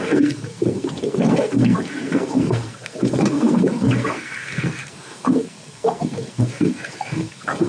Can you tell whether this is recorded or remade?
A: remade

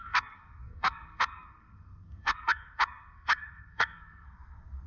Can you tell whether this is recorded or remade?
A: remade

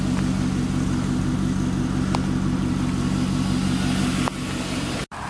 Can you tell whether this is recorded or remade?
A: recorded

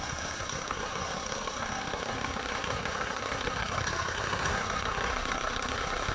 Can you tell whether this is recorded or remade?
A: remade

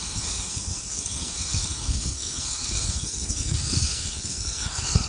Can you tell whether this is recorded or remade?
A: remade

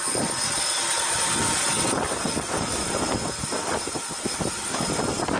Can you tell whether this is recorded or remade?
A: recorded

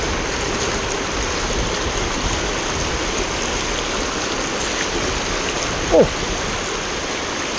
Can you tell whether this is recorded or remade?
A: recorded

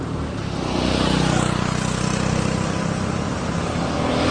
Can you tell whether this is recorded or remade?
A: recorded